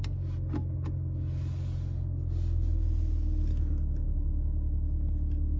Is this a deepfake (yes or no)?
no